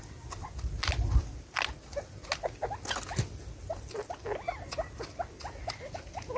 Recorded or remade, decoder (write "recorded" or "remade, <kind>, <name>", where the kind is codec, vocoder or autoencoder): recorded